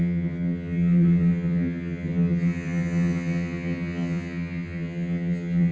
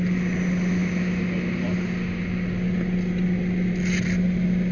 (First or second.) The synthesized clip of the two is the first